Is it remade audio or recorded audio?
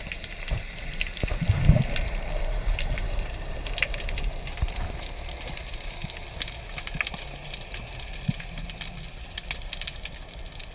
recorded